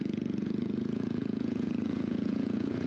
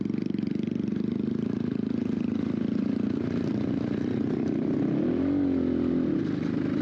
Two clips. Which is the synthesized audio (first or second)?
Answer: first